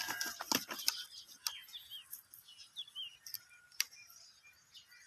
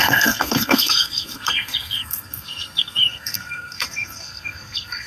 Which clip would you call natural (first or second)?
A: first